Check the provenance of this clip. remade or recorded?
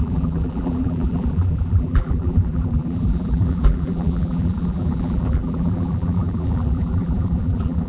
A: remade